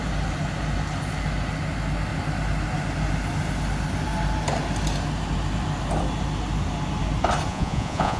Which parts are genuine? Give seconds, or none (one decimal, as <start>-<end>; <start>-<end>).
0.0-7.5